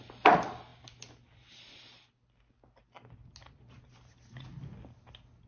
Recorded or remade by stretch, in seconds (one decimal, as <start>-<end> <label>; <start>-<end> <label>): 0.0-5.5 recorded